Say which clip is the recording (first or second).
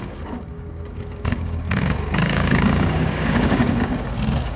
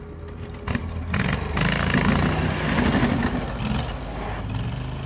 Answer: second